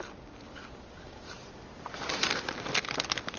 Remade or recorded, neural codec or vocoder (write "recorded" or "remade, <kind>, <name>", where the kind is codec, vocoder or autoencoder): recorded